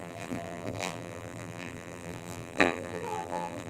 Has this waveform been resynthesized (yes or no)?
yes